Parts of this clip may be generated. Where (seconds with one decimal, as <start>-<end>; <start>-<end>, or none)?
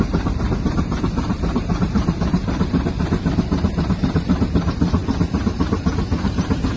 0.0-2.4; 3.9-6.8